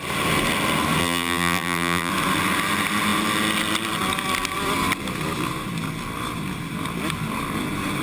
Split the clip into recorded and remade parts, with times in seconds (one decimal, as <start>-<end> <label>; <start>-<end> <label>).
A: 0.0-1.0 recorded; 1.0-2.1 remade; 2.1-8.0 recorded